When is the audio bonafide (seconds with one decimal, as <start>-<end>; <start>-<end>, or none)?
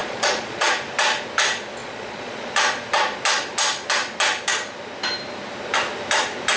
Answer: 0.7-1.8; 2.5-6.6